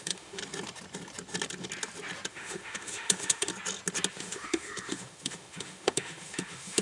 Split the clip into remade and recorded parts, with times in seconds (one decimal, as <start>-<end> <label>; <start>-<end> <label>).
0.0-0.4 remade; 0.4-2.3 recorded; 2.3-3.5 remade; 3.5-4.1 recorded; 4.1-6.8 remade